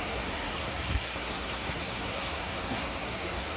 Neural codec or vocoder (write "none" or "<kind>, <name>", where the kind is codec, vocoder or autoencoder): codec, SNAC